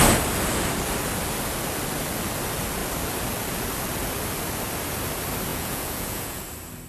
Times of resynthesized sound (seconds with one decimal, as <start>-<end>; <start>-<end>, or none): 5.5-6.4